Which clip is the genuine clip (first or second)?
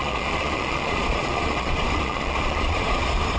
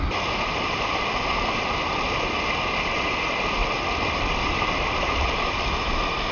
second